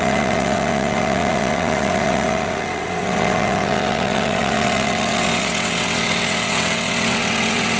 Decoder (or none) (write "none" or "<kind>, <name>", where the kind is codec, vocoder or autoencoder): vocoder, WaveNeXt